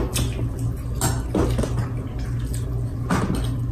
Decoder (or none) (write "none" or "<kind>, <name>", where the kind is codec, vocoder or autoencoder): none